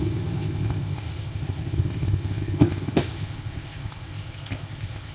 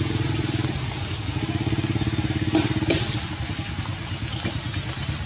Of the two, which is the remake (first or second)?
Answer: first